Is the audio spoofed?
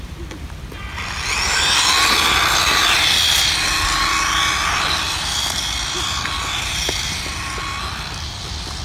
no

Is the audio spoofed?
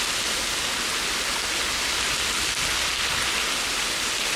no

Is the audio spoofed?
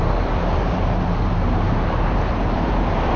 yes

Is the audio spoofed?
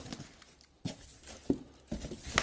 no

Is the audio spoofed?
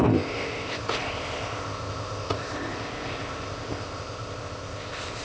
yes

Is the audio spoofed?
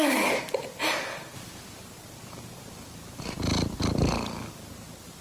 no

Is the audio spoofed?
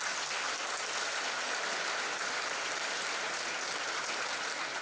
no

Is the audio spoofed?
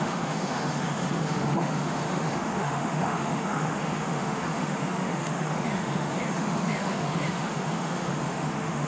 yes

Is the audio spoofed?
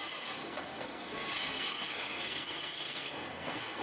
yes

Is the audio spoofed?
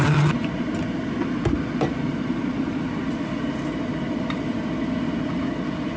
no